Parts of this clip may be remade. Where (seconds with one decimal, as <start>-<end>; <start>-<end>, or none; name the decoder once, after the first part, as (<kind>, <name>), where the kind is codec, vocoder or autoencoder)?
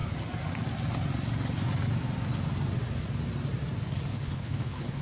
4.1-5.0 (codec, HILCodec)